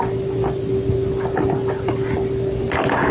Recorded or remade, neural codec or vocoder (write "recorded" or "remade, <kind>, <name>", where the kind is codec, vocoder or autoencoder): recorded